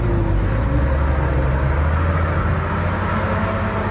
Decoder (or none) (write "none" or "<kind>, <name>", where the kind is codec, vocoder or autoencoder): none